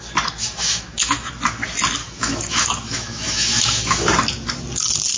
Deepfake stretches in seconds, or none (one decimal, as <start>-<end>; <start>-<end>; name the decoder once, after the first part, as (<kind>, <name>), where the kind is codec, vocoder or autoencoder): 0.4-1.3 (autoencoder, DAC-VAE); 2.0-4.1